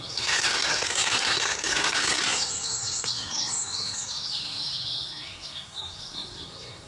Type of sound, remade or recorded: remade